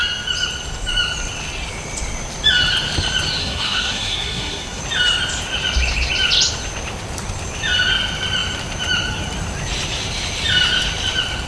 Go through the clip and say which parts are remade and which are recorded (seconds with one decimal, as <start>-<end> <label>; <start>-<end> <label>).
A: 0.0-3.4 recorded; 3.4-4.8 remade; 4.8-11.5 recorded